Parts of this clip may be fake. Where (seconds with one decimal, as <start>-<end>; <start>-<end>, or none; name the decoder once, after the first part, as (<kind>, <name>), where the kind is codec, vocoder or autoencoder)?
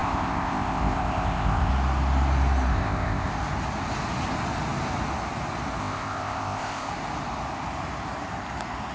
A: 0.0-1.7 (codec, ZipCodec); 2.7-3.3; 5.8-6.9